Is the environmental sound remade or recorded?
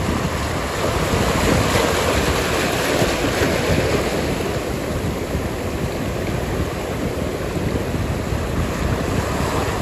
recorded